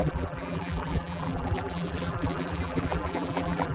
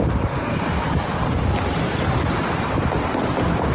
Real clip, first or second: second